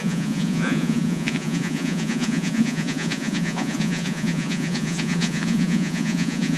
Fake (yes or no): yes